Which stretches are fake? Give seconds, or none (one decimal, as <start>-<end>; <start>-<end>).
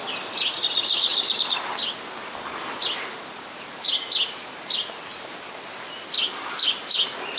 none